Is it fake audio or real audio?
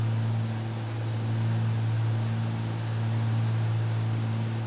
real